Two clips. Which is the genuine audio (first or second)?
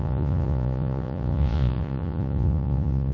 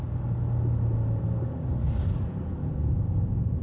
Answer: second